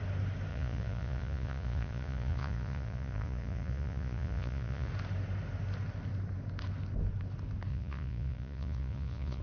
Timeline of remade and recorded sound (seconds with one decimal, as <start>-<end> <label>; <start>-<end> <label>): 0.0-0.5 recorded; 0.5-4.9 remade; 4.9-7.7 recorded; 7.7-9.4 remade

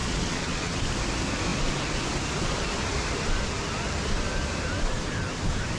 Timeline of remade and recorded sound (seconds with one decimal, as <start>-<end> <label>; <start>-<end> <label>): 0.0-0.8 remade; 0.8-5.8 recorded

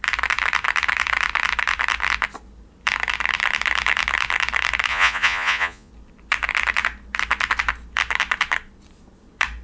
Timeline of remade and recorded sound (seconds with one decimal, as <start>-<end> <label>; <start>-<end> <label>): 0.0-4.9 recorded; 4.9-5.9 remade; 5.9-9.6 recorded

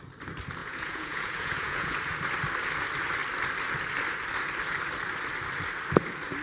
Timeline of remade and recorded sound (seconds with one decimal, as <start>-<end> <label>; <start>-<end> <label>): 0.0-0.6 recorded; 0.6-2.0 remade; 2.0-6.4 recorded

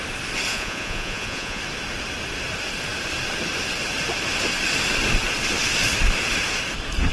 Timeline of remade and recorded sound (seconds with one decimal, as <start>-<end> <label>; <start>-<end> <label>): 0.0-0.5 recorded; 0.5-1.6 remade; 1.6-7.1 recorded

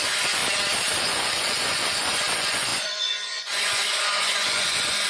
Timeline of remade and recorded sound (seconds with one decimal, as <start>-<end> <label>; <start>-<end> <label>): 0.0-0.4 remade; 0.4-1.0 recorded; 1.0-5.1 remade

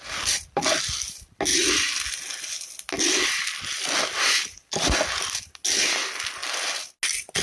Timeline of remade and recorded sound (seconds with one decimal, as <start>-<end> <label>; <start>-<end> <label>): 0.0-7.4 recorded